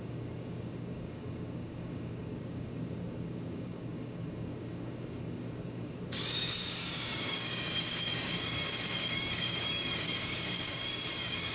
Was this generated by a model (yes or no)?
yes